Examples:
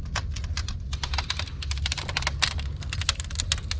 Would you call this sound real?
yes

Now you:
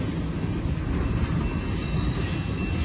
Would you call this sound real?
yes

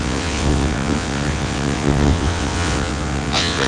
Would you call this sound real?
no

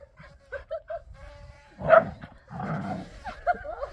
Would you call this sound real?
no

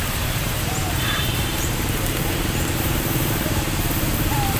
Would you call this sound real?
no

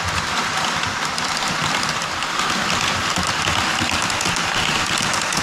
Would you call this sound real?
yes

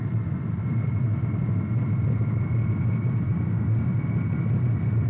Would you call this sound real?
yes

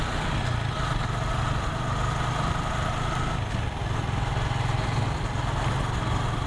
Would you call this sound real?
yes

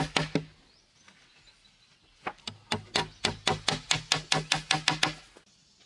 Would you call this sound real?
yes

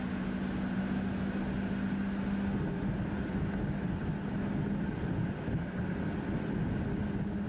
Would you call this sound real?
yes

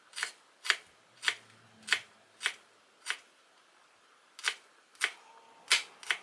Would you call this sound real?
yes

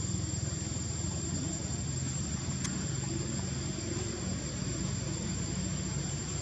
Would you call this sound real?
no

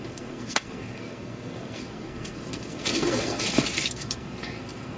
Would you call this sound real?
no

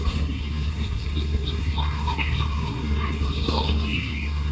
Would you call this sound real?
no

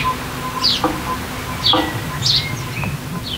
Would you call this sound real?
yes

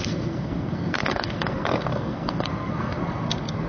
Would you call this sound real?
no